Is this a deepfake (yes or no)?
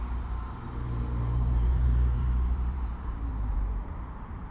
yes